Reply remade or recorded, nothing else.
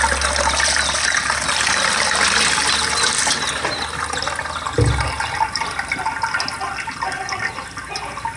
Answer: recorded